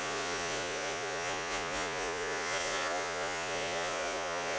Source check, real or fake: fake